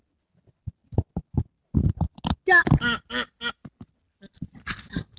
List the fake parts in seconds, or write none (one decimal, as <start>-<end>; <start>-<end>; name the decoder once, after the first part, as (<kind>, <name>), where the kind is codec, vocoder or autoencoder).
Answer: none